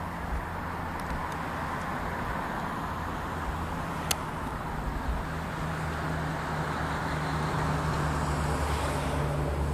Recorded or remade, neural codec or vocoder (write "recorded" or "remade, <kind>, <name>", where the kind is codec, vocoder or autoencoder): recorded